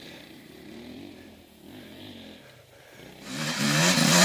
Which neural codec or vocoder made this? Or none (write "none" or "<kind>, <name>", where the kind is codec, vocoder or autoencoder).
none